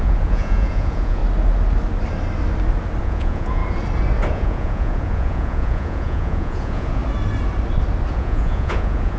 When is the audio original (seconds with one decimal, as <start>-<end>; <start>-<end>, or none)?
1.2-3.0; 3.6-4.3; 7.0-8.1